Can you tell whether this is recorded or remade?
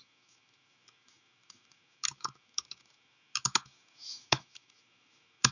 remade